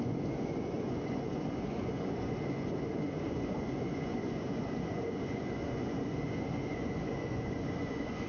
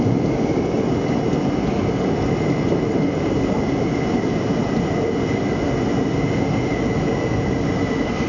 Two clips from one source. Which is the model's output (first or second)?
first